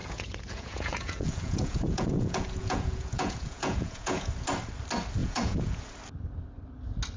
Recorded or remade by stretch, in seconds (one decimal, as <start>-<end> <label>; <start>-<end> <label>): 0.0-4.3 remade; 4.3-5.2 recorded; 5.2-5.9 remade; 5.9-7.2 recorded